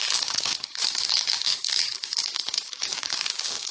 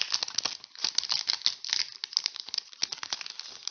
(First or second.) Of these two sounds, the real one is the second